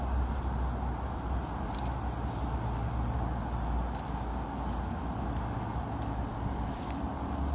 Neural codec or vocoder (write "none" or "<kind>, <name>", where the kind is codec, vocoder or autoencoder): none